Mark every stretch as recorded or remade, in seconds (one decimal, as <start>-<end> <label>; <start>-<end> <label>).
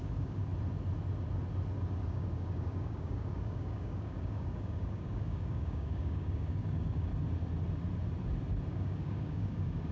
0.0-0.5 remade; 0.5-2.1 recorded; 2.1-7.1 remade; 7.1-8.7 recorded; 8.7-9.9 remade